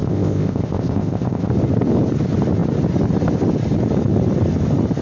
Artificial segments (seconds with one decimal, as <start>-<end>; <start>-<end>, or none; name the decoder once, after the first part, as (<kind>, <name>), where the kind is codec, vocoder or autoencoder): 0.0-1.5 (codec, ZipCodec)